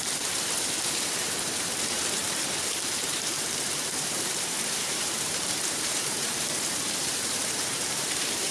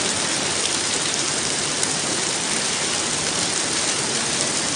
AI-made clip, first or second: first